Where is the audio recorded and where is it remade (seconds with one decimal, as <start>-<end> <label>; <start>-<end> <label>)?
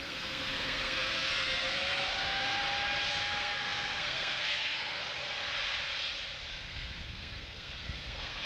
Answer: 0.0-2.6 remade; 2.6-3.1 recorded; 3.1-5.0 remade; 5.0-6.5 recorded; 6.5-8.5 remade